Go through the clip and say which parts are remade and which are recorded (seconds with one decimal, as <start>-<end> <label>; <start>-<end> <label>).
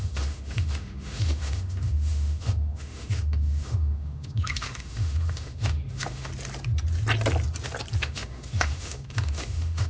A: 0.0-6.3 remade; 6.3-8.0 recorded; 8.0-9.9 remade